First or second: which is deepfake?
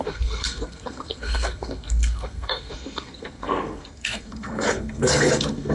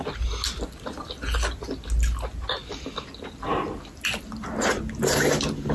first